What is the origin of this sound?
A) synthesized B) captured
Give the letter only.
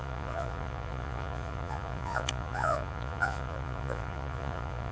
A